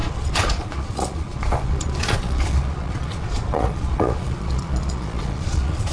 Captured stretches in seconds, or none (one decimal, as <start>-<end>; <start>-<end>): none